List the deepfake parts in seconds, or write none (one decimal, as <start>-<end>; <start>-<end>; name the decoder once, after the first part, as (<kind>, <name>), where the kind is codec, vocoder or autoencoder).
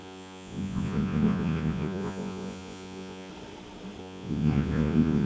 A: 0.0-3.3 (vocoder, Vocos); 4.0-5.3